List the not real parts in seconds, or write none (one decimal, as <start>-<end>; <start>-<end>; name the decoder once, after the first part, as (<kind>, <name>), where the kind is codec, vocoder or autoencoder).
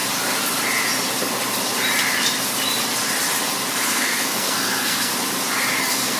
3.7-5.1 (codec, SNAC); 5.8-6.2